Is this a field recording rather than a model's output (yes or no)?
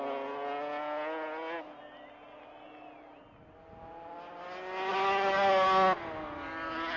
yes